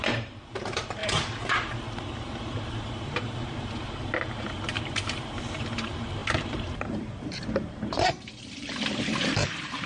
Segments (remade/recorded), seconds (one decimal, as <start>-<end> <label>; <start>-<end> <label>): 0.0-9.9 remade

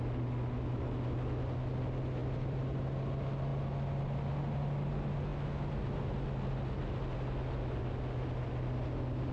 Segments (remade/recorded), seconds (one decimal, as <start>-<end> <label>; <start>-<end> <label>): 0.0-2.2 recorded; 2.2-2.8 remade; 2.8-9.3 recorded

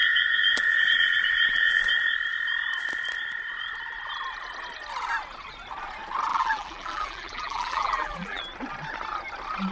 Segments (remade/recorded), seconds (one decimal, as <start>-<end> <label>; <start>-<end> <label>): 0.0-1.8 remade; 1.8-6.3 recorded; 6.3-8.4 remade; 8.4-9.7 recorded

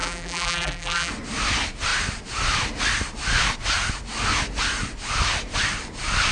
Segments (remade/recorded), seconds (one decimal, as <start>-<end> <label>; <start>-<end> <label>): 0.0-1.1 remade; 1.1-6.3 recorded

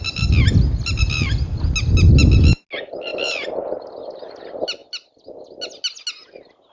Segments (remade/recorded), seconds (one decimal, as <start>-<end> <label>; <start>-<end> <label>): 0.0-3.1 recorded; 3.1-4.0 remade; 4.0-6.7 recorded